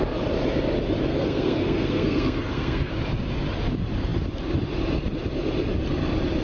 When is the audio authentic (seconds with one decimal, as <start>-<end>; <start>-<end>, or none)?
0.0-1.1; 2.9-6.4